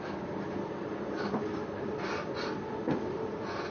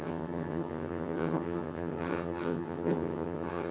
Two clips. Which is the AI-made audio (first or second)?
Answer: second